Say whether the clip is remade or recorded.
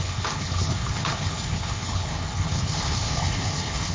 remade